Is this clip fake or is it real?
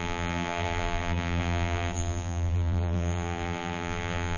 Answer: fake